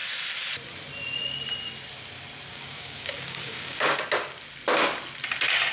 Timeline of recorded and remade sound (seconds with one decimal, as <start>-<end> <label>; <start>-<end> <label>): 0.0-2.5 recorded; 2.5-4.0 remade; 4.0-5.7 recorded